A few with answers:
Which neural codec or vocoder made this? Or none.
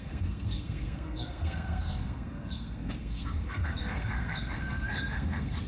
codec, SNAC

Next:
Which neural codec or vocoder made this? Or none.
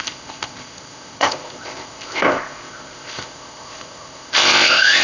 codec, ZipCodec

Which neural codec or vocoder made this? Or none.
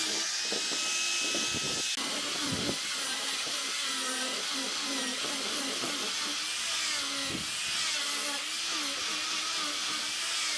none